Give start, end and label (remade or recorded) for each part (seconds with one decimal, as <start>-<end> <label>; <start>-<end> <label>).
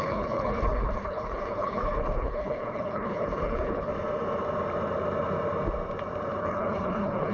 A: 0.0-3.9 remade; 3.9-6.4 recorded; 6.4-7.3 remade